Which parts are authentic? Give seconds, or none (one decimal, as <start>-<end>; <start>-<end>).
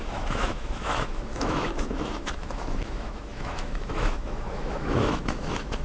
none